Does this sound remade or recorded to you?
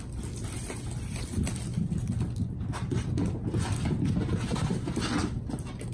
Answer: recorded